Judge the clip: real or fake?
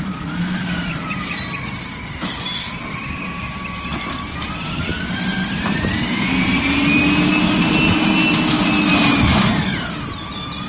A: real